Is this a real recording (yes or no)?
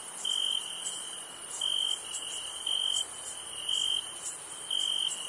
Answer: yes